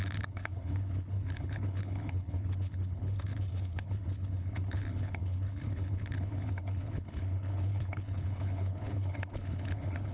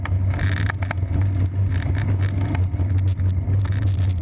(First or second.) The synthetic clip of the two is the first